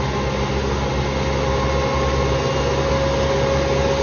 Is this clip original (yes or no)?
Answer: yes